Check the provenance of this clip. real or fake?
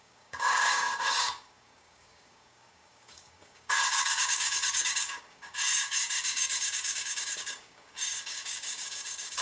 fake